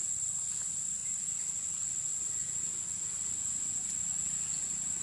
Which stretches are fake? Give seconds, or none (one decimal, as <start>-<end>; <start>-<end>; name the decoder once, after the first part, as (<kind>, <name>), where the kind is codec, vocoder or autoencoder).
none